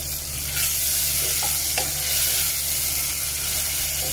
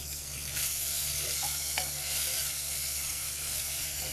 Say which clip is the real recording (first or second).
first